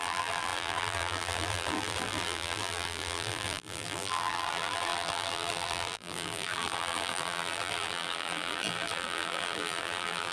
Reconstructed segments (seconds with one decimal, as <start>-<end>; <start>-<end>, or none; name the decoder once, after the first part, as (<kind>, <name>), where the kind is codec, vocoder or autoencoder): 0.0-10.3 (vocoder, BigVGAN v2)